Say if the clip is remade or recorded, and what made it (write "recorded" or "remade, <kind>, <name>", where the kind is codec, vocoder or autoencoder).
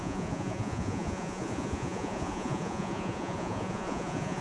remade, vocoder, Vocos